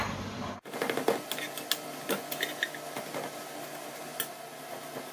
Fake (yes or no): no